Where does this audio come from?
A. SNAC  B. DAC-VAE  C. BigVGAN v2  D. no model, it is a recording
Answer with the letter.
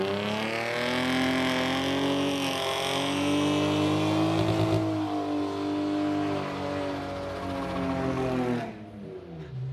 D